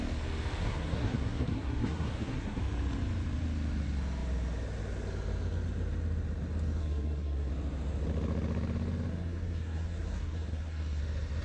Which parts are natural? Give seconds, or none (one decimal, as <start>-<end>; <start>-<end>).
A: 0.0-0.6; 2.6-6.8; 7.5-9.1; 11.0-11.4